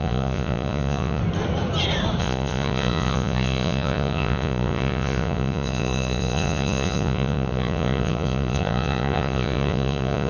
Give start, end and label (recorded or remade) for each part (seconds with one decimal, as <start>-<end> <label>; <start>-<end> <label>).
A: 0.0-1.2 remade; 1.2-2.2 recorded; 2.2-10.3 remade

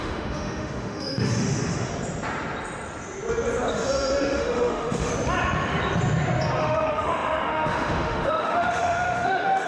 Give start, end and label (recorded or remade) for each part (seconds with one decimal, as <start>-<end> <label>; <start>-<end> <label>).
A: 0.0-1.9 remade; 1.9-3.7 recorded; 3.7-5.1 remade; 5.1-6.6 recorded; 6.6-9.7 remade